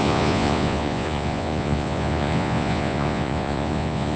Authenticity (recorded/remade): remade